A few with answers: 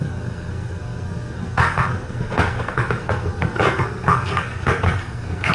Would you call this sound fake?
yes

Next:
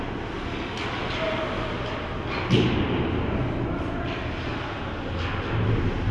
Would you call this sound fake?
no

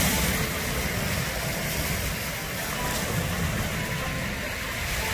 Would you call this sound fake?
no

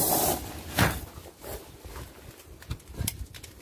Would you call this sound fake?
no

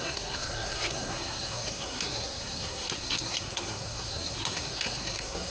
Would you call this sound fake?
yes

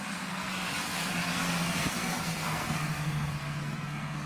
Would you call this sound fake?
yes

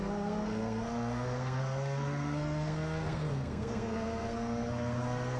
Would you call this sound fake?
yes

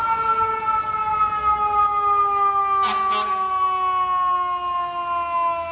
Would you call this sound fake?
no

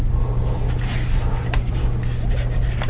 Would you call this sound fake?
no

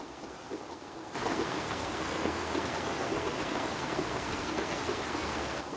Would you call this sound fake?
yes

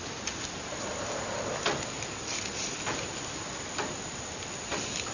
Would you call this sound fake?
no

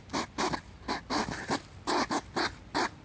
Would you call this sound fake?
no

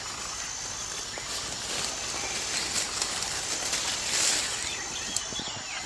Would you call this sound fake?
no